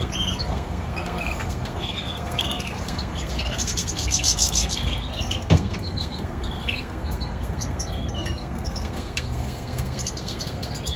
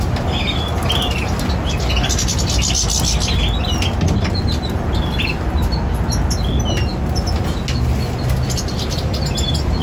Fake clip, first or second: first